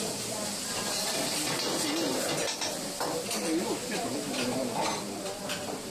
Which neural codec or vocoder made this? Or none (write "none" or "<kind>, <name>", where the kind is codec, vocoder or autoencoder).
none